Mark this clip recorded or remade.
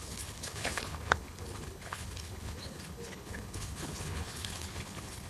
remade